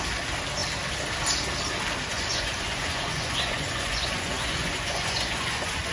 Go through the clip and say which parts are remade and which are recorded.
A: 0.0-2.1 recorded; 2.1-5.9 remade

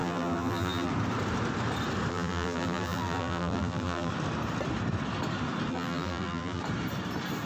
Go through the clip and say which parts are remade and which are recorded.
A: 0.0-0.9 remade; 0.9-2.1 recorded; 2.1-4.1 remade; 4.1-5.7 recorded; 5.7-6.6 remade; 6.6-7.5 recorded

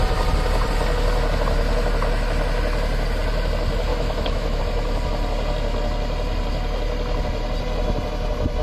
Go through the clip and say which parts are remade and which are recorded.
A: 0.0-3.9 recorded; 3.9-4.6 remade; 4.6-8.6 recorded

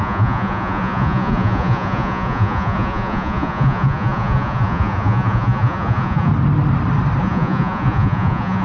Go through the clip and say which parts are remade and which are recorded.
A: 0.0-6.3 remade; 6.3-7.2 recorded; 7.2-8.6 remade

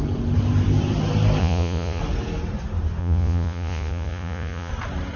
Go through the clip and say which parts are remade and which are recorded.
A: 0.0-1.4 recorded; 1.4-2.0 remade; 2.0-3.0 recorded; 3.0-4.7 remade; 4.7-5.2 recorded

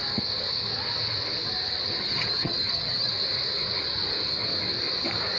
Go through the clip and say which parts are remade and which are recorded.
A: 0.0-2.0 recorded; 2.0-3.1 remade; 3.1-5.4 recorded

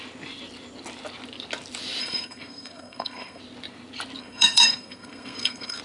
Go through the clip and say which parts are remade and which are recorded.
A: 0.0-2.0 recorded; 2.0-3.4 remade; 3.4-4.2 recorded; 4.2-5.8 remade

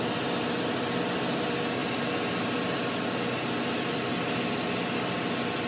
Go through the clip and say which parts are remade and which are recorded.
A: 0.0-5.7 recorded